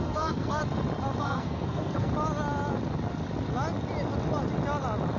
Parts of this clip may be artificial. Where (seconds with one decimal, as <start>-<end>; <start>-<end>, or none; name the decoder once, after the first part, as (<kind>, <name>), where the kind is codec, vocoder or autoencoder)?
0.0-0.6 (codec, SNAC); 1.2-2.1